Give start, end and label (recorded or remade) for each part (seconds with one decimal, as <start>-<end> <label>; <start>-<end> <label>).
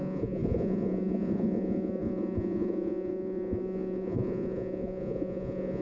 0.0-5.8 remade